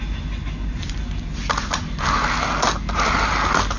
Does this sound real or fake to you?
real